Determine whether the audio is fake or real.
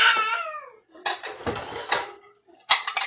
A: real